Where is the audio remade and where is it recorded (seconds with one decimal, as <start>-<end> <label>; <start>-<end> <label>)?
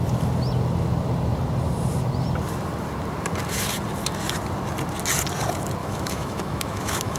0.0-5.8 recorded; 5.8-7.2 remade